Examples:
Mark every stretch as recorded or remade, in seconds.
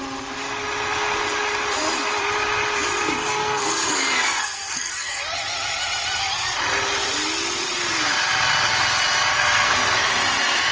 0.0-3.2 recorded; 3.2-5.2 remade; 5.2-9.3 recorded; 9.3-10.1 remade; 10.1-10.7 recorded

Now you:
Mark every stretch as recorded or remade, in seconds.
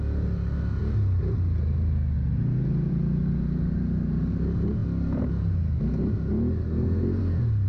0.0-6.6 recorded; 6.6-7.2 remade; 7.2-7.7 recorded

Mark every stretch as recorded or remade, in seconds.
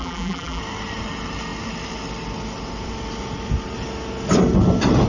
0.0-0.6 remade; 0.6-5.1 recorded